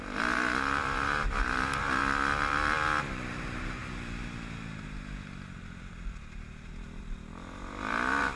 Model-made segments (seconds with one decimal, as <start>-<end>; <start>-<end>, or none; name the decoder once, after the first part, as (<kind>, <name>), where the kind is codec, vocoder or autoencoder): 0.0-2.0 (vocoder, BigVGAN v2); 3.0-3.8; 7.0-8.4